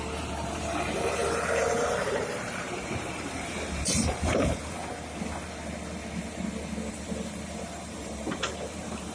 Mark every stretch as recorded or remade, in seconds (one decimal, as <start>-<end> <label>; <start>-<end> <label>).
0.0-4.8 remade; 4.8-6.9 recorded; 6.9-9.1 remade